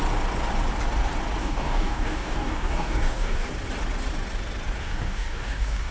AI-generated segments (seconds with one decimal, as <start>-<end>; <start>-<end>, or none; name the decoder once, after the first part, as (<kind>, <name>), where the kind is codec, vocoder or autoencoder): 1.4-3.5 (codec, DAC); 4.8-5.9